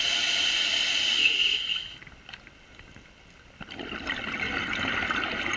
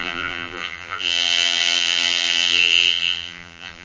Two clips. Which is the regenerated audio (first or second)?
second